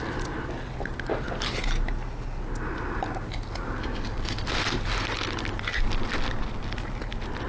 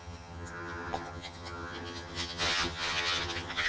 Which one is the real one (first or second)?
first